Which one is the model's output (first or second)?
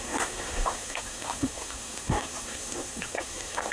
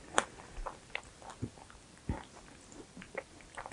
first